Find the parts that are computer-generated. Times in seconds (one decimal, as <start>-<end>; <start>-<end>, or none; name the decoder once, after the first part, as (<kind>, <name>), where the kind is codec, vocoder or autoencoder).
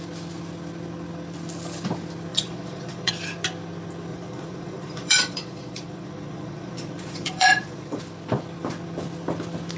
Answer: 2.3-3.1 (vocoder, Vocos); 4.1-8.0